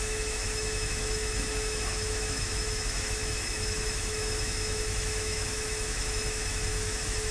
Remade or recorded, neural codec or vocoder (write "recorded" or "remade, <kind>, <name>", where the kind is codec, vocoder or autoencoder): remade, autoencoder, DAC-VAE